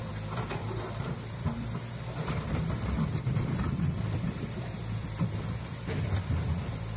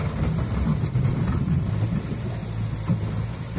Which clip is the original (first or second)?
second